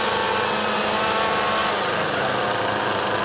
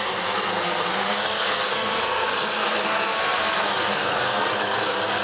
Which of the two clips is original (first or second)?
first